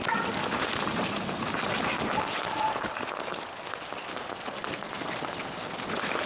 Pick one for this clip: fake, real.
real